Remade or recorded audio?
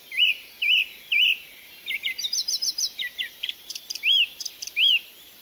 remade